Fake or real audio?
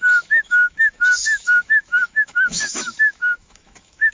fake